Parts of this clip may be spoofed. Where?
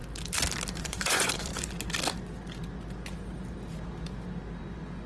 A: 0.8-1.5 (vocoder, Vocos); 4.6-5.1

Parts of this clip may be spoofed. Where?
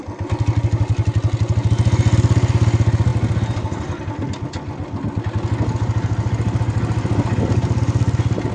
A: none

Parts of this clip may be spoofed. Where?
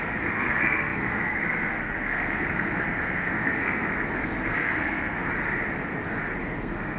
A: 0.0-5.3 (codec, SNAC); 6.6-7.0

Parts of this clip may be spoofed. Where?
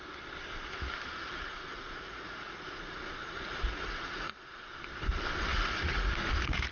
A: 1.5-4.7 (vocoder, Vocos); 5.5-6.1